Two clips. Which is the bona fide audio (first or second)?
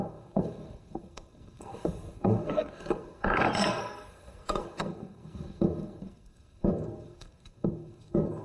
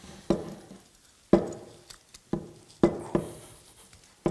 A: second